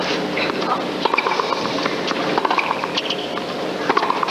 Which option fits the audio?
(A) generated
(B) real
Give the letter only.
B